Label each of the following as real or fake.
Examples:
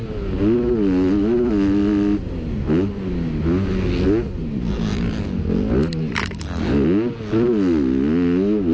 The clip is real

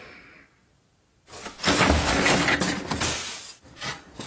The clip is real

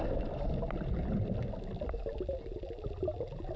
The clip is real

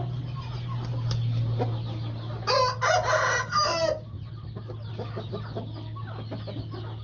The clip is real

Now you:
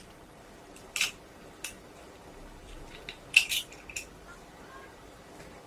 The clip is fake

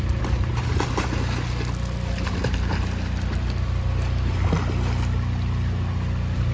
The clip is real